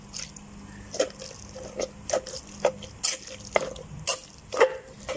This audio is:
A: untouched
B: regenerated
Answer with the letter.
A